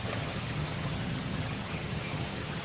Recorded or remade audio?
remade